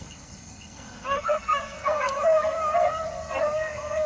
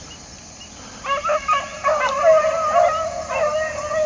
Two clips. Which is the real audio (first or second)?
second